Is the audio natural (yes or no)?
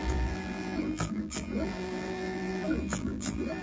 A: no